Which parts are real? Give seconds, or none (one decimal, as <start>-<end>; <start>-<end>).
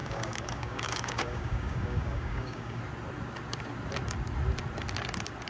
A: 2.8-5.5